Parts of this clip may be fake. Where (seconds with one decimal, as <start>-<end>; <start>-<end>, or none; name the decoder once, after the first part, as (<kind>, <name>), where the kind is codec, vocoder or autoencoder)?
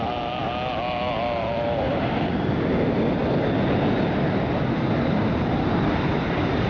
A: none